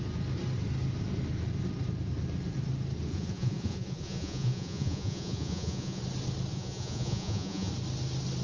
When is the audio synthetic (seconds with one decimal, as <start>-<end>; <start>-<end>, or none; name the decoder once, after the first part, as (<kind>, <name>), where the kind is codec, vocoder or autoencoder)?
3.1-6.0 (vocoder, Vocos); 6.5-7.7